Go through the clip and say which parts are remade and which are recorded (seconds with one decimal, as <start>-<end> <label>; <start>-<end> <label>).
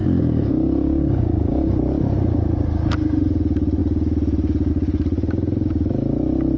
0.0-1.7 remade; 1.7-6.6 recorded